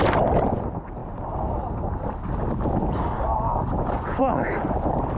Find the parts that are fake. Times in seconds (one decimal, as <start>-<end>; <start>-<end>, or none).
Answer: none